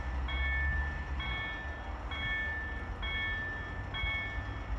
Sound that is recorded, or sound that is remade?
recorded